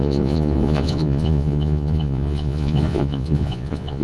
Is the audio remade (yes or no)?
yes